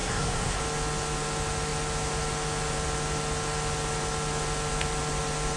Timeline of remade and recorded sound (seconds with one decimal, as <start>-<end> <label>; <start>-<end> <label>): 0.0-0.6 remade; 0.6-5.6 recorded